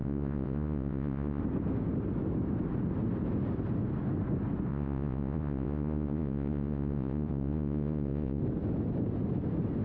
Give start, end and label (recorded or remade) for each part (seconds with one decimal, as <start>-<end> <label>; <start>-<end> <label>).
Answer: 0.0-1.4 remade; 1.4-4.7 recorded; 4.7-8.4 remade; 8.4-9.8 recorded